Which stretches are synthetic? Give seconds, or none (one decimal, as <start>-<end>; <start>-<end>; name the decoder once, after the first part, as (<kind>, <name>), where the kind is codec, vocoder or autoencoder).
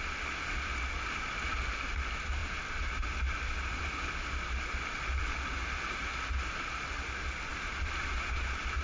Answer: 2.4-3.9 (vocoder, BigVGAN v2); 7.5-8.8